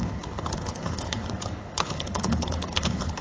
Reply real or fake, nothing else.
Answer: fake